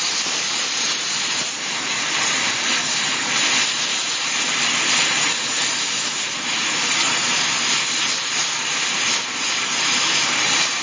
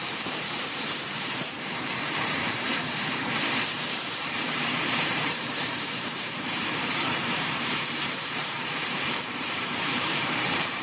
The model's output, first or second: second